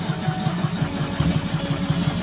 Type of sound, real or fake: real